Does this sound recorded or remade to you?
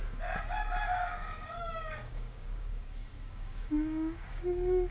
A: remade